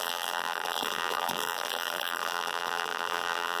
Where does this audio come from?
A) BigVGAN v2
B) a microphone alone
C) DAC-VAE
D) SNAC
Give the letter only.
A